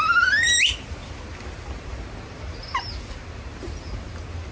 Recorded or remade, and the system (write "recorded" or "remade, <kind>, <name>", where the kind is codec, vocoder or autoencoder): recorded